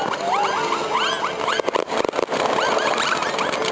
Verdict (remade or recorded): recorded